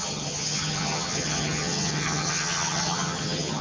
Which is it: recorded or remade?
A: remade